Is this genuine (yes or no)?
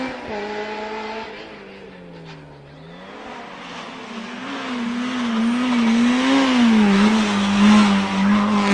yes